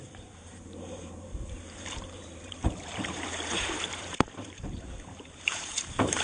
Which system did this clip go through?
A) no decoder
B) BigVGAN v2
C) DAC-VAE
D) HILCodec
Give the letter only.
B